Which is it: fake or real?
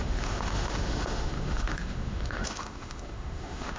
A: fake